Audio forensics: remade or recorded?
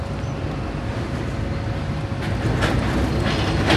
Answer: recorded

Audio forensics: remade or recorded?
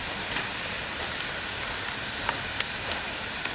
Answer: remade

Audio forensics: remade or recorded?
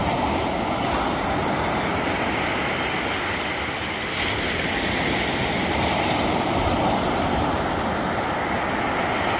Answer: recorded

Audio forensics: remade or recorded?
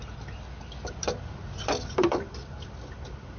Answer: recorded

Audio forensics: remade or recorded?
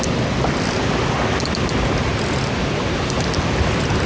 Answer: recorded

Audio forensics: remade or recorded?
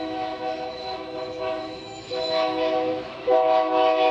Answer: remade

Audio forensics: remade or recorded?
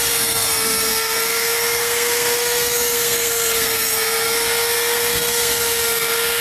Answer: remade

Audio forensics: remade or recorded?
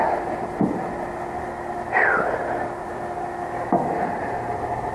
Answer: recorded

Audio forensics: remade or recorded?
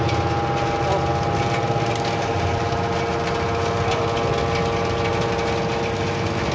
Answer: recorded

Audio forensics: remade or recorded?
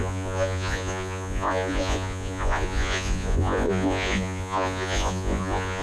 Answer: remade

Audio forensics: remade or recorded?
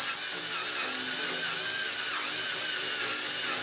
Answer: recorded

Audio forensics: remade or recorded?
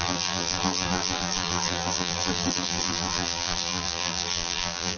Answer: remade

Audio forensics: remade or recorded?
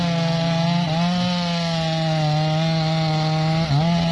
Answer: recorded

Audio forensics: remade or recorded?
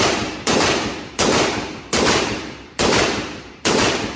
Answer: remade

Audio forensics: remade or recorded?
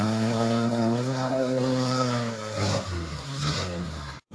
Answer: remade